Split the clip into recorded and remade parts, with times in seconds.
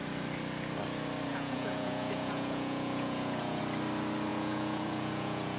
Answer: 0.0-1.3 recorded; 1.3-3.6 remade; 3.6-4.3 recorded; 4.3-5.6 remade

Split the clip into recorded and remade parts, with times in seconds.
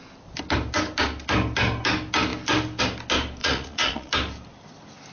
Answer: 0.0-3.4 recorded; 3.4-4.1 remade; 4.1-5.1 recorded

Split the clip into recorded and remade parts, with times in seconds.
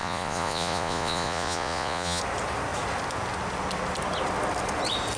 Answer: 0.0-2.2 remade; 2.2-5.2 recorded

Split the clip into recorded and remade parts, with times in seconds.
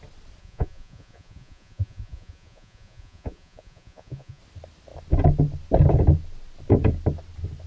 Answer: 0.0-0.4 recorded; 0.4-4.4 remade; 4.4-7.7 recorded